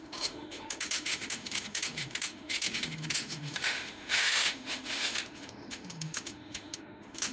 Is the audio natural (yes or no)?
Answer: no